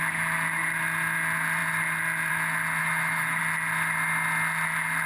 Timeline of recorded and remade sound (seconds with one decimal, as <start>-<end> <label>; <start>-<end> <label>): 0.0-2.8 recorded; 2.8-3.4 remade; 3.4-5.1 recorded